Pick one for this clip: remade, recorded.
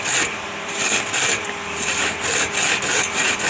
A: remade